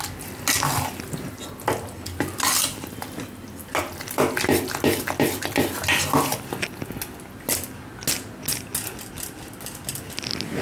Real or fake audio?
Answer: real